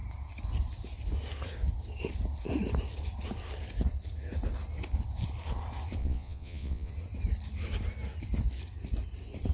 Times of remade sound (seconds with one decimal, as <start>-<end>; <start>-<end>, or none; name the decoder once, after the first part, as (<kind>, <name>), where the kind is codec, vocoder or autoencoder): 6.0-6.9 (vocoder, Vocos)